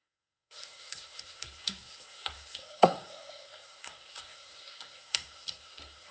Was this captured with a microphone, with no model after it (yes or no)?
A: no